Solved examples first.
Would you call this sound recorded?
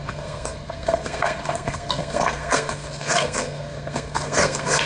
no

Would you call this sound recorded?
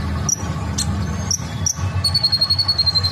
yes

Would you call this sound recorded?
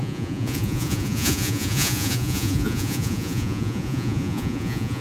no